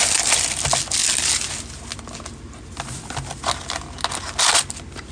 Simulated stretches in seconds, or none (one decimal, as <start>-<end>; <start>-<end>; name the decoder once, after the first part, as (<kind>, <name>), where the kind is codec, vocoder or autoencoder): none